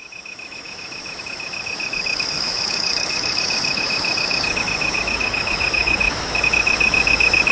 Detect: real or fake fake